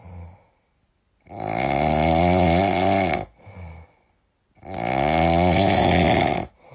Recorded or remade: recorded